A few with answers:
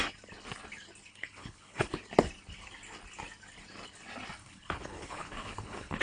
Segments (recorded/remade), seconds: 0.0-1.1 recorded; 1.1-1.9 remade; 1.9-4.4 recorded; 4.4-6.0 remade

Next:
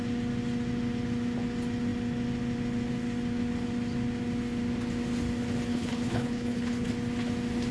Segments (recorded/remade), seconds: 0.0-5.7 recorded; 5.7-6.9 remade; 6.9-7.7 recorded

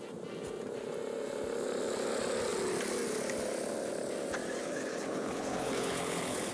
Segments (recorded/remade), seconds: 0.0-4.6 recorded; 4.6-6.5 remade

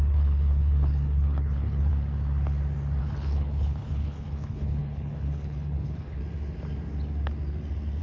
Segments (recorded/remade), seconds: 0.0-1.9 remade; 1.9-3.0 recorded; 3.0-6.2 remade; 6.2-8.0 recorded

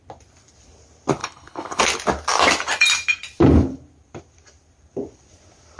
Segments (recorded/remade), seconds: 0.0-1.2 recorded; 1.2-1.8 remade; 1.8-5.8 recorded